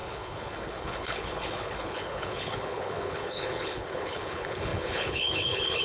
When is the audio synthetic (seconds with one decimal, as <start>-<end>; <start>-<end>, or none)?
0.0-5.8